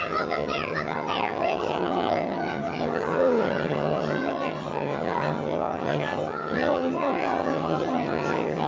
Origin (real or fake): fake